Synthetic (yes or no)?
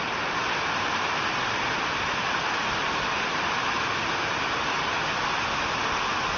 no